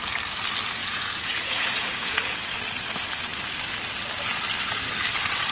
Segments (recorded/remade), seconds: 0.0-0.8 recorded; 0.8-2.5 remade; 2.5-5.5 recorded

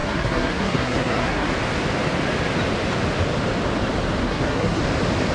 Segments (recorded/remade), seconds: 0.0-1.5 remade; 1.5-4.2 recorded; 4.2-4.8 remade; 4.8-5.3 recorded